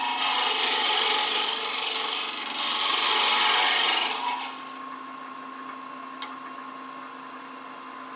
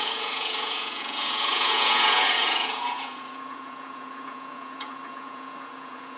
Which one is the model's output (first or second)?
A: second